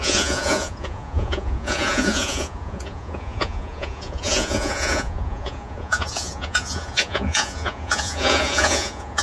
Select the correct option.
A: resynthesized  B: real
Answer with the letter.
A